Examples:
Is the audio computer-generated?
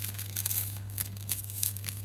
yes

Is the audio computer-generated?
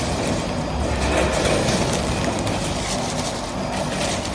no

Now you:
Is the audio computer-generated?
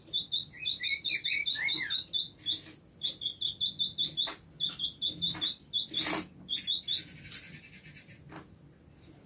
no